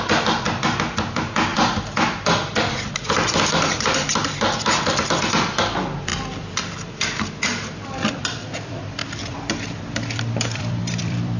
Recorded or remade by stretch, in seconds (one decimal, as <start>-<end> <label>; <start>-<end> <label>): 0.0-11.4 remade